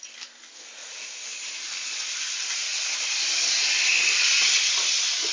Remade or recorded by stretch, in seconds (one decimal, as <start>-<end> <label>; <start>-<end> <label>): 0.0-5.3 recorded